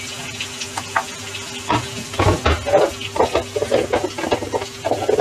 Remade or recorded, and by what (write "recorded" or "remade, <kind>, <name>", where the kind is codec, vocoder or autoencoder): recorded